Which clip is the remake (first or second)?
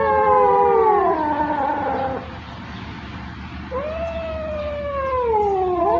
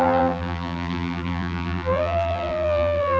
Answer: second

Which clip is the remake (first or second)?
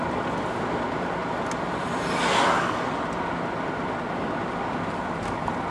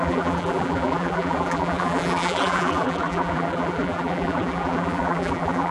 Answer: second